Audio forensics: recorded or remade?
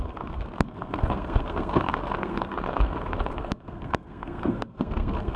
remade